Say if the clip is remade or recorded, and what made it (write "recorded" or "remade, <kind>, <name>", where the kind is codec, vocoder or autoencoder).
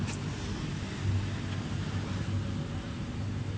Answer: recorded